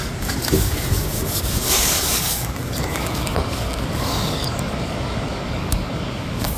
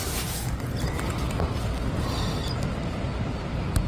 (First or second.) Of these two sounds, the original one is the second